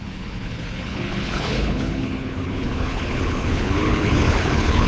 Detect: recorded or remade remade